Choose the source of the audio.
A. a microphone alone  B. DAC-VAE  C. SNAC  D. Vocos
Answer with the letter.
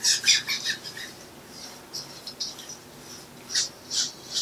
A